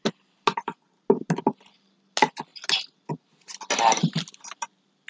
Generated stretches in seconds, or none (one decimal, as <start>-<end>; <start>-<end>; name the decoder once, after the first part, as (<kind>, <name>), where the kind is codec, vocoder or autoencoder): none